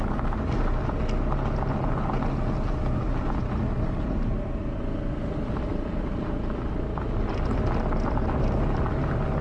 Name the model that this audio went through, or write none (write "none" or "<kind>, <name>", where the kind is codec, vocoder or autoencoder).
none